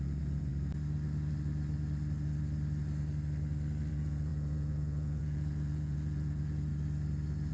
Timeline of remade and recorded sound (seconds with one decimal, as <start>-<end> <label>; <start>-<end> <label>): 0.0-0.5 remade; 0.5-3.9 recorded; 3.9-6.7 remade; 6.7-7.5 recorded